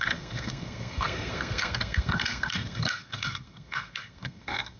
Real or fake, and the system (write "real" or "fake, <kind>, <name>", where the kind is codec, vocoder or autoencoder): fake, codec, SNAC